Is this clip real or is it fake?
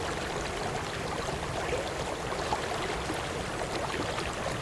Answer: real